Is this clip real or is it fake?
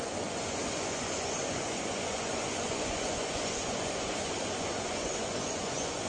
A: fake